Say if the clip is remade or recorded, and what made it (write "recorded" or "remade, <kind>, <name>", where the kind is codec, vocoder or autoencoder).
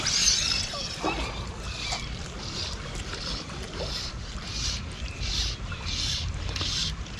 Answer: recorded